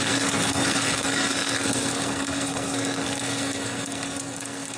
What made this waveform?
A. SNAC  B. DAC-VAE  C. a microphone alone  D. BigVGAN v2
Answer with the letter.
A